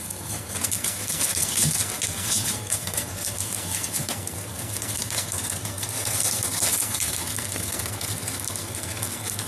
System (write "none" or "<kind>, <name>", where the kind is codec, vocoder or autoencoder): codec, SNAC